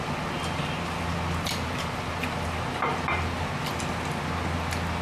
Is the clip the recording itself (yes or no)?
yes